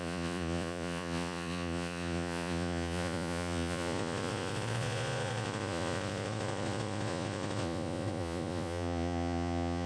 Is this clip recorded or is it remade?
remade